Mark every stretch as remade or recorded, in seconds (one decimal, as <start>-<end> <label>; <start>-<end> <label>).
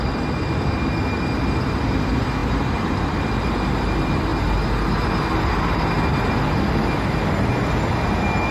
0.0-2.4 recorded; 2.4-3.2 remade; 3.2-8.5 recorded